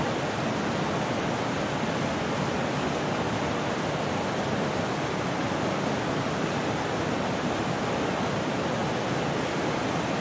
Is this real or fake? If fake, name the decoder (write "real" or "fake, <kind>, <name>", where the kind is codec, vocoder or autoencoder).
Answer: real